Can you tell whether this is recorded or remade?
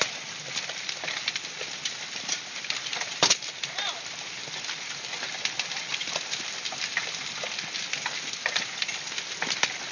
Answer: remade